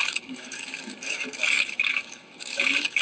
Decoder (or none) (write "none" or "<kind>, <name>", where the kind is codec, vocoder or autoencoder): codec, DAC